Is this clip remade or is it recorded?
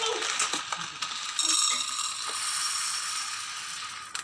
recorded